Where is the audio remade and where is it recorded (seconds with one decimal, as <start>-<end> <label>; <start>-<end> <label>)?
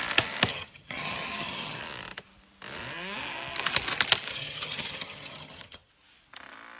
0.0-0.5 recorded; 0.5-1.8 remade; 1.8-4.3 recorded; 4.3-5.9 remade; 5.9-6.8 recorded